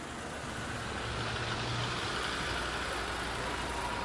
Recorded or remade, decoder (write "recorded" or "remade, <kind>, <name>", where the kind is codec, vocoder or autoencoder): recorded